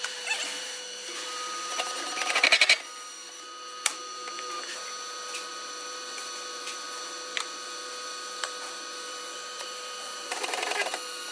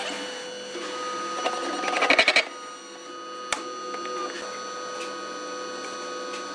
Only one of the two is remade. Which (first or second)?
first